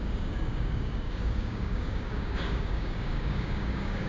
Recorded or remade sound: remade